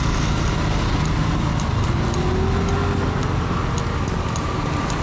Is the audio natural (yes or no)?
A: yes